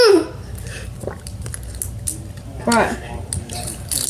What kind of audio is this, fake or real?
real